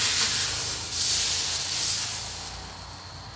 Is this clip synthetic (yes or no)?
no